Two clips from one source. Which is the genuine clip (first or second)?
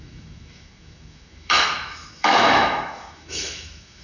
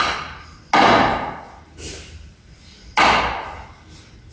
second